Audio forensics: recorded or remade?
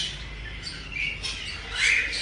recorded